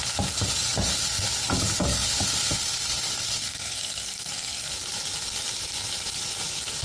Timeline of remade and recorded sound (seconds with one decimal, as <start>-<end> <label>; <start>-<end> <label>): 0.0-3.4 recorded; 3.4-4.7 remade; 4.7-6.8 recorded